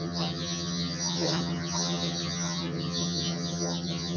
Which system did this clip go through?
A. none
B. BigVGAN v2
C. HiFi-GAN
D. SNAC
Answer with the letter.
C